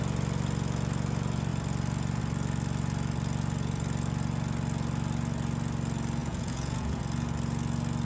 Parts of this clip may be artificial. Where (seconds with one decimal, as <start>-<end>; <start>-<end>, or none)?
6.2-7.0